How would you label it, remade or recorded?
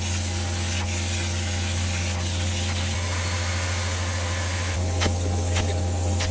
recorded